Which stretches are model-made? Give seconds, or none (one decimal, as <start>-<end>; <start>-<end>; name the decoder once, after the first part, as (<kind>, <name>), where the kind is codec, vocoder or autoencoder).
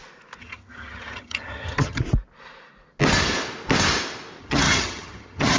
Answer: 0.4-2.0 (vocoder, HiFi-GAN); 4.4-5.6